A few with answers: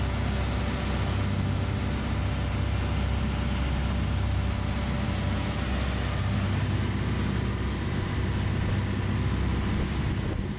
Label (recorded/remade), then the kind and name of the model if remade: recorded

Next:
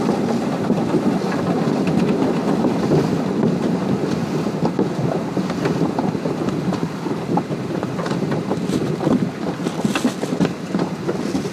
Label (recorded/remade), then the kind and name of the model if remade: recorded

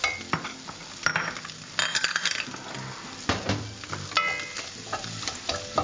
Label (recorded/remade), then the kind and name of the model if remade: recorded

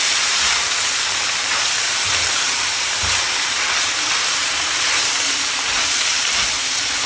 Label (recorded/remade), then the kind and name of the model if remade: remade, vocoder, BigVGAN v2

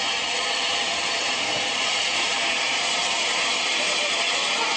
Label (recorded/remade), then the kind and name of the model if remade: remade, vocoder, BigVGAN v2